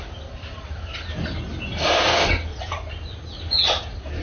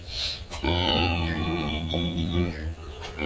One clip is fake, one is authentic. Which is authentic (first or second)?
first